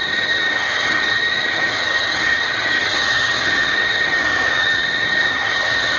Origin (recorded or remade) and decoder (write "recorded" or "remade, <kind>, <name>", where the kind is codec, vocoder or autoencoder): remade, vocoder, HiFi-GAN